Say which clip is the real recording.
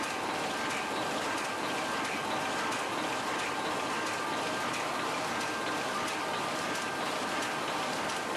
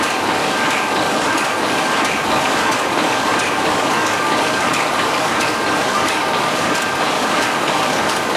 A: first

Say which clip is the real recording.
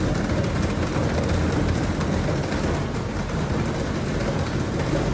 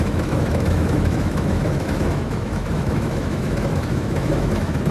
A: first